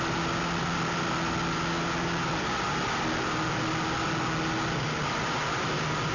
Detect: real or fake real